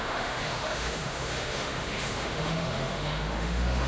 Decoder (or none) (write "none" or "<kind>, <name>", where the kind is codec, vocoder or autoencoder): autoencoder, DAC-VAE